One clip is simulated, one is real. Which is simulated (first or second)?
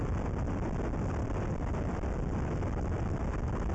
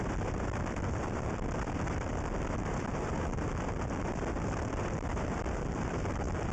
second